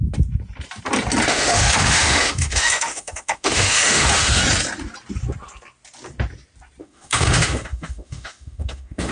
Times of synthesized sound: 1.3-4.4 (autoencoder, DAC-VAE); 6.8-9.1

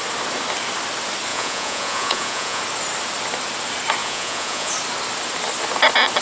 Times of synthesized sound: 1.3-2.6 (vocoder, Vocos); 4.0-4.7

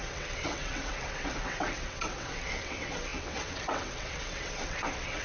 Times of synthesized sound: 0.0-5.2 (vocoder, WaveNeXt)

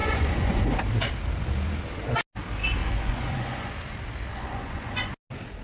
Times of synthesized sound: 0.0-0.8 (vocoder, Vocos); 2.8-3.7; 4.3-5.1